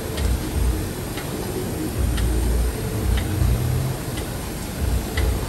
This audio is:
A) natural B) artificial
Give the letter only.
A